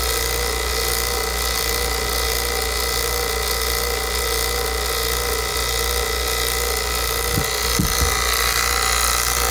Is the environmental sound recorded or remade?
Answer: recorded